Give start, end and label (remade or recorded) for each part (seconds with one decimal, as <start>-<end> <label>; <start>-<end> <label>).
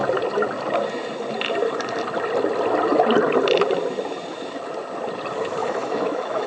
0.0-5.6 recorded; 5.6-6.5 remade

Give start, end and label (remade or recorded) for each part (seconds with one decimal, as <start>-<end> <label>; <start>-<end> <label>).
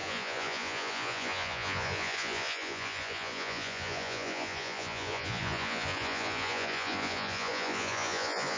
0.0-8.6 remade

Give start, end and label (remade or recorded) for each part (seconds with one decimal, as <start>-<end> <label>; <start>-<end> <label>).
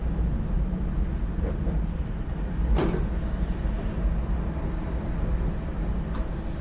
0.0-6.6 recorded